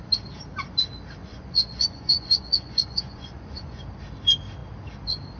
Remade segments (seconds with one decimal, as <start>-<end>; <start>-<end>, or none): 1.2-3.8